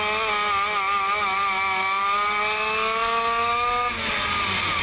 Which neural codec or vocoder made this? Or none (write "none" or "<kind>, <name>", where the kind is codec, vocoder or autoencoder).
none